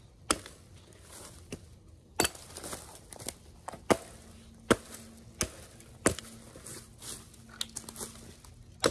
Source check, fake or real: real